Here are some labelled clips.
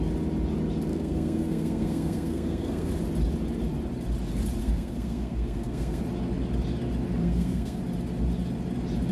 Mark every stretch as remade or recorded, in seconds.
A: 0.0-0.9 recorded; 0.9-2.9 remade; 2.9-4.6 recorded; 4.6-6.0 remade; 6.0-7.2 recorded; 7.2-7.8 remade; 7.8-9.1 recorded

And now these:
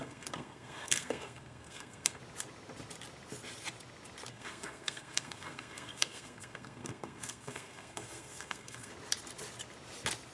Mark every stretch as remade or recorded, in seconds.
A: 0.0-2.2 remade; 2.2-4.3 recorded; 4.3-8.9 remade; 8.9-10.3 recorded

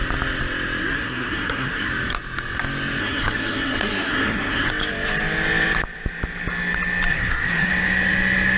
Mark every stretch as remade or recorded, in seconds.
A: 0.0-0.8 recorded; 0.8-1.9 remade; 1.9-3.0 recorded; 3.0-4.7 remade; 4.7-7.1 recorded; 7.1-7.7 remade; 7.7-8.6 recorded

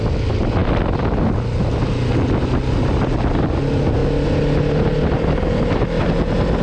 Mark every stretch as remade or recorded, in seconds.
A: 0.0-6.6 recorded

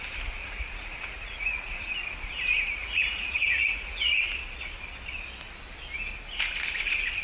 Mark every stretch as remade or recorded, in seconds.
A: 0.0-0.4 recorded; 0.4-1.9 remade; 1.9-2.8 recorded; 2.8-4.2 remade; 4.2-7.2 recorded